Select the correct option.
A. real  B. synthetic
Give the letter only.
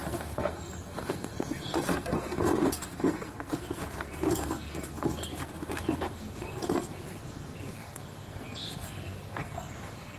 B